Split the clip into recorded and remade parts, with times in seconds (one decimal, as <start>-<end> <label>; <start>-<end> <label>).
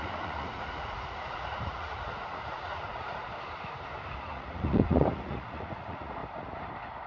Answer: 0.0-3.3 remade; 3.3-4.2 recorded; 4.2-6.2 remade; 6.2-7.1 recorded